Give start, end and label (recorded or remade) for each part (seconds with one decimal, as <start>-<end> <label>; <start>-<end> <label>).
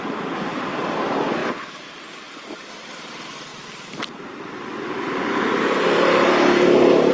0.0-1.4 remade; 1.4-2.6 recorded; 2.6-3.5 remade; 3.5-4.5 recorded; 4.5-7.1 remade